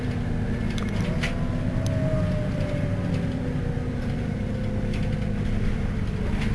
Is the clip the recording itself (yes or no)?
yes